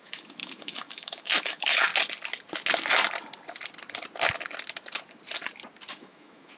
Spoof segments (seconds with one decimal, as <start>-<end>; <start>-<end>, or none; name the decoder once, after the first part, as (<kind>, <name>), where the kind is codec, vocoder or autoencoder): 0.0-1.9 (autoencoder, DAC-VAE); 5.9-6.6